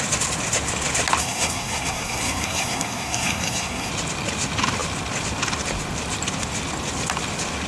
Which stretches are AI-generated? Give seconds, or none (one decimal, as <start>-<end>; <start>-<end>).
1.2-3.9